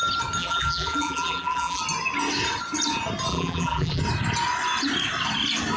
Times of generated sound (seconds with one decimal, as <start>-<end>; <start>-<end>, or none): 0.4-1.8; 3.3-4.0